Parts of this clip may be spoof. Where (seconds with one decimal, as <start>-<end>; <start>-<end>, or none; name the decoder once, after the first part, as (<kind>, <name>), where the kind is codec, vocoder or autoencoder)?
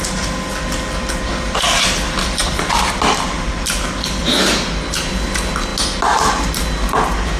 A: 2.4-4.2 (vocoder, BigVGAN v2)